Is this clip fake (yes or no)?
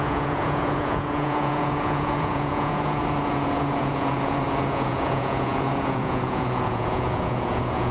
yes